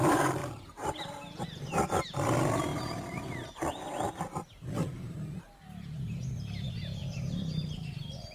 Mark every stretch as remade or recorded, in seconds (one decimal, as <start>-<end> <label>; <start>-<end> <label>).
0.0-0.4 recorded; 0.4-1.0 remade; 1.0-2.7 recorded; 2.7-6.3 remade; 6.3-7.0 recorded; 7.0-8.3 remade